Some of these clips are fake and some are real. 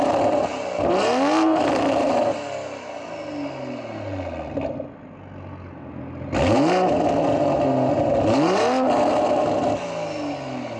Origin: real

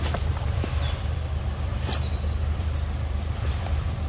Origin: fake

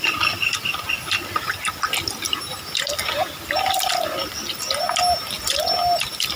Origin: real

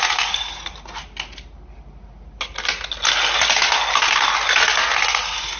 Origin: real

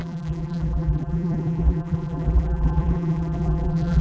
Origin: fake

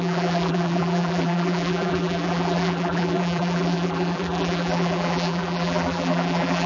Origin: fake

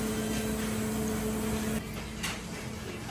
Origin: real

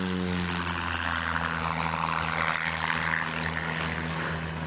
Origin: real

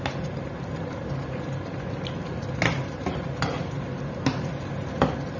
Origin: real